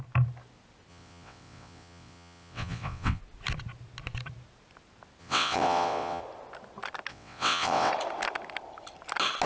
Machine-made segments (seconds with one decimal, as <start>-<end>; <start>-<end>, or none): 0.9-3.2; 5.2-6.2; 7.1-7.9